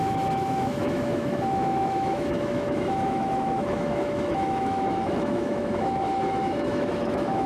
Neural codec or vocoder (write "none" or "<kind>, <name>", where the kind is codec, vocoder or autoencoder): autoencoder, DAC-VAE